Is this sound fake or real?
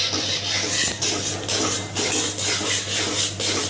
real